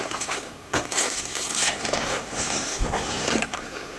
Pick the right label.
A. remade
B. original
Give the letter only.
A